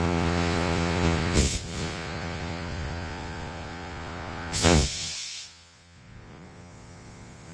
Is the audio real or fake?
fake